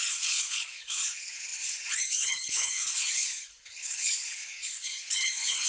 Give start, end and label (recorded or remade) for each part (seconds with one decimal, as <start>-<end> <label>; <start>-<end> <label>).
0.0-5.7 remade